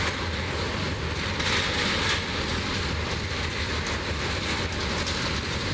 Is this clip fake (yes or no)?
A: no